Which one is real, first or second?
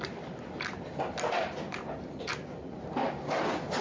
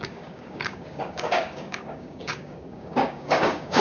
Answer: first